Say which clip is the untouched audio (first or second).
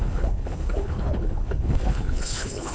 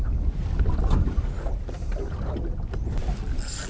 second